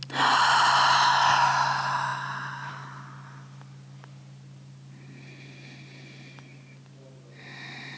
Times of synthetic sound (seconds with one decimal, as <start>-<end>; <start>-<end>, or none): none